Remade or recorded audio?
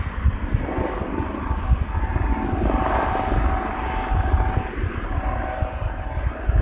recorded